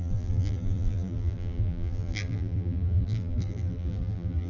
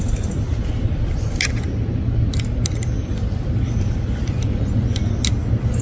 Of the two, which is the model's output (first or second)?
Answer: first